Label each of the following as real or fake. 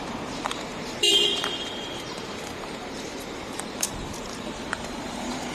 fake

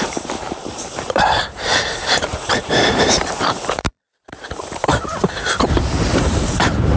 fake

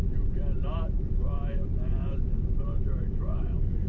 fake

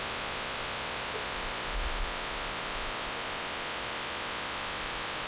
real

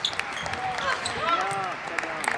real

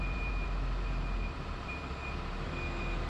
fake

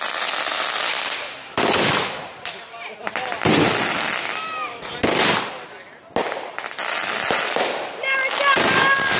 real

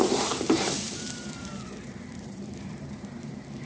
fake